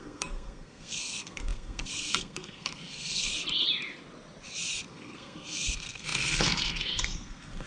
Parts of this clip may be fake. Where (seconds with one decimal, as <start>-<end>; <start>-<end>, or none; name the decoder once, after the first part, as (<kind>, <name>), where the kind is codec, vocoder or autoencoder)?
0.0-3.3 (codec, SNAC); 4.9-7.7